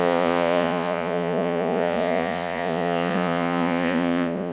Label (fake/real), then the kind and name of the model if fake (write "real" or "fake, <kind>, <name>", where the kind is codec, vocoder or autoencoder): fake, vocoder, Vocos